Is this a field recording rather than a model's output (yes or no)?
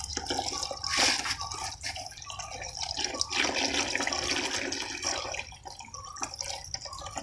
yes